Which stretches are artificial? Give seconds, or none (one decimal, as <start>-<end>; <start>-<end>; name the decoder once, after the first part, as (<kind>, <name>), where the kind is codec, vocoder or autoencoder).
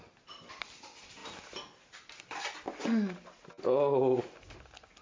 none